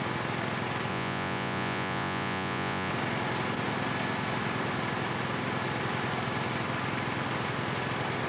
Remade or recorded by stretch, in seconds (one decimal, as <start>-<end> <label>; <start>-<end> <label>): 0.0-0.9 recorded; 0.9-2.9 remade; 2.9-8.3 recorded